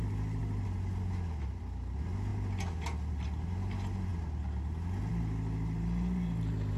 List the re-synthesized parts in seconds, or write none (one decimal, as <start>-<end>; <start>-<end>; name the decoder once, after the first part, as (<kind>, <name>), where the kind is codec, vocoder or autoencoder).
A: none

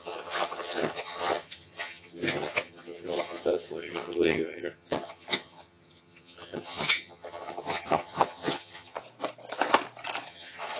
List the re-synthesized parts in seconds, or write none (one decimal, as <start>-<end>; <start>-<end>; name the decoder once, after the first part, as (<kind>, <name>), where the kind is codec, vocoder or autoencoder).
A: 0.0-9.0 (vocoder, HiFi-GAN); 10.3-10.8

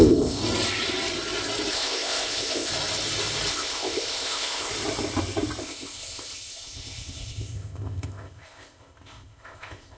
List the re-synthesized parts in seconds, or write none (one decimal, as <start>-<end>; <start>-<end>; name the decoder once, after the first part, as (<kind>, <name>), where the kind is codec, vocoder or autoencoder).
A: 0.0-0.4 (codec, ZipCodec); 1.7-2.7; 3.5-4.7; 5.6-10.0

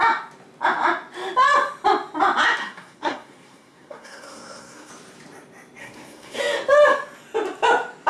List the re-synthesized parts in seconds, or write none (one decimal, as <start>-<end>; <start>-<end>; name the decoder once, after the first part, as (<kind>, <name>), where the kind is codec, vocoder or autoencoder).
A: 2.6-4.9 (codec, SNAC); 5.8-6.4

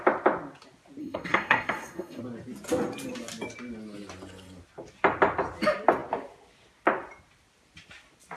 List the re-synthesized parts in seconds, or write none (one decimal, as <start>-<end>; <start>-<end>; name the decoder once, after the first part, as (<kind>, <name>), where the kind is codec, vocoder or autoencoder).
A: 1.0-2.2 (codec, SNAC)

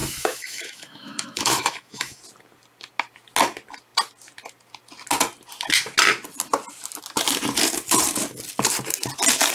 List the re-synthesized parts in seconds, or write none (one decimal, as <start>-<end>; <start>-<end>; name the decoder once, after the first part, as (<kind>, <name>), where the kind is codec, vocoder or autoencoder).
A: 0.0-2.2 (autoencoder, DAC-VAE)

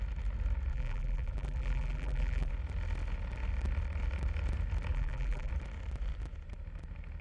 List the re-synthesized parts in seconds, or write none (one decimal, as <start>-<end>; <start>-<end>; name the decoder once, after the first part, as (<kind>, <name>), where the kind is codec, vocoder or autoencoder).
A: 0.7-2.5 (vocoder, BigVGAN v2); 4.9-5.5

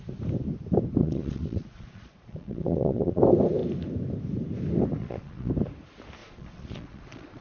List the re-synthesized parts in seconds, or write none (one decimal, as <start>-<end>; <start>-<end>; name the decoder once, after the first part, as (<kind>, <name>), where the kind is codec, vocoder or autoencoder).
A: 1.0-3.2 (vocoder, Vocos); 5.0-5.5; 6.2-7.4